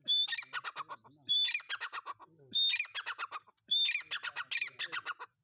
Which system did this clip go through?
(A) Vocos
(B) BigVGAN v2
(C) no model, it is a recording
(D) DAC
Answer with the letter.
C